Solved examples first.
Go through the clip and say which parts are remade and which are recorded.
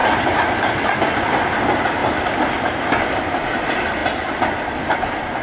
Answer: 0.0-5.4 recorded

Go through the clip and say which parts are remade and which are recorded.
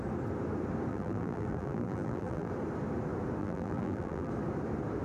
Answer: 0.0-0.9 recorded; 0.9-2.5 remade; 2.5-3.4 recorded; 3.4-4.3 remade; 4.3-5.0 recorded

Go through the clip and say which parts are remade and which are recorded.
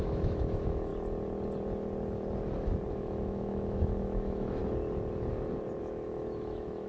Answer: 0.0-0.9 remade; 0.9-2.9 recorded; 2.9-4.6 remade; 4.6-5.8 recorded; 5.8-6.9 remade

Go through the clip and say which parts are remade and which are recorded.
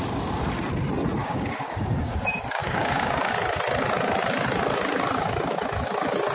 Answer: 0.0-1.2 recorded; 1.2-2.2 remade; 2.2-2.6 recorded; 2.6-3.3 remade; 3.3-6.3 recorded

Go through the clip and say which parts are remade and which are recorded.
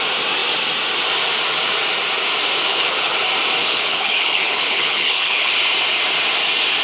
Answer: 0.0-2.7 recorded; 2.7-3.2 remade; 3.2-3.6 recorded; 3.6-5.5 remade; 5.5-6.8 recorded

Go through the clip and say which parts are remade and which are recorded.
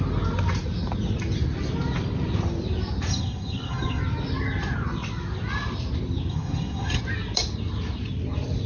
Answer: 0.0-3.1 recorded; 3.1-4.0 remade; 4.0-6.3 recorded; 6.3-7.0 remade; 7.0-8.7 recorded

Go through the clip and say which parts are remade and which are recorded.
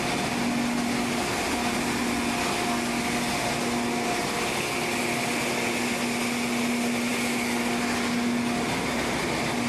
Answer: 0.0-9.7 recorded